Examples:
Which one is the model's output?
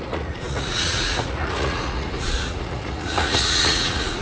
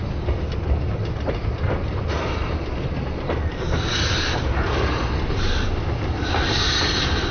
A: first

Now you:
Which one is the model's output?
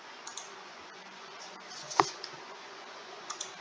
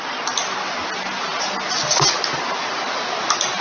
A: first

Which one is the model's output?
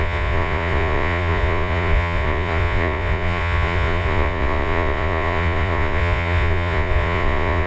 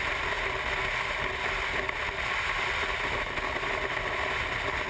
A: first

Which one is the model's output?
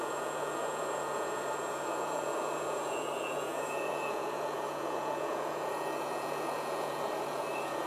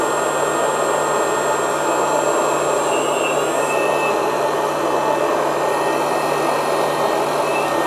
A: first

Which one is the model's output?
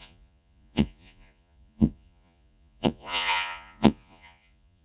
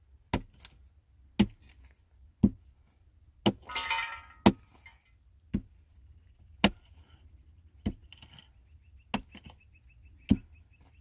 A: first